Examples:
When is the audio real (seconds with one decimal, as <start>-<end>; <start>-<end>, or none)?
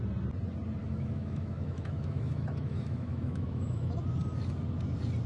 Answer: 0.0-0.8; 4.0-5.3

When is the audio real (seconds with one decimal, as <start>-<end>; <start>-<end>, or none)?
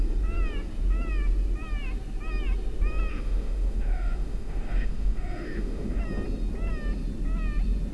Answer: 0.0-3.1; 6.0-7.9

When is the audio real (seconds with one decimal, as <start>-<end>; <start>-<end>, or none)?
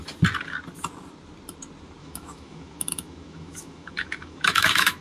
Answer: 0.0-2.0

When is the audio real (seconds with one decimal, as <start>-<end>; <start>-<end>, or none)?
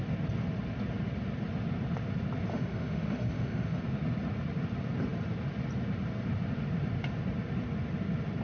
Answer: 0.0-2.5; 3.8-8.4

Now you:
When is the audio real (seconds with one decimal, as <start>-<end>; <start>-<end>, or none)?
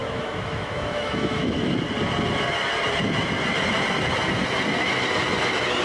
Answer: 1.8-5.8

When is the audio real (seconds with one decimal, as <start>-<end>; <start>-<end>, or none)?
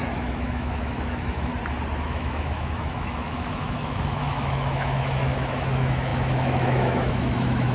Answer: 1.5-2.0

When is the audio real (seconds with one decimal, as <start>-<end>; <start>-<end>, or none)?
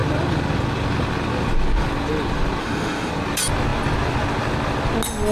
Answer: 0.0-2.6; 3.1-5.3